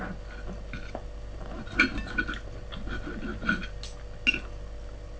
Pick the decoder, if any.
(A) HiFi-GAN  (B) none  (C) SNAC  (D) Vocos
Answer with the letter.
B